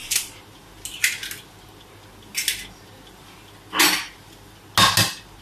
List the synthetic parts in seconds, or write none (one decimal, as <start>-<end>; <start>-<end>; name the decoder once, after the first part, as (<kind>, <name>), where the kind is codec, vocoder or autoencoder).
none